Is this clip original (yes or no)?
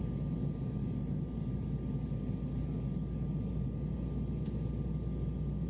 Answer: yes